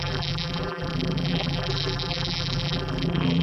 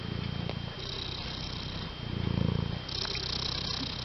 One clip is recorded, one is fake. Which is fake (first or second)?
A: first